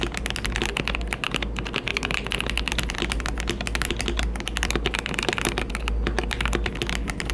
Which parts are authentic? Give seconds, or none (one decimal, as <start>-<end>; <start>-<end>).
0.0-7.3